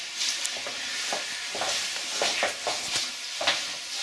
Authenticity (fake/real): real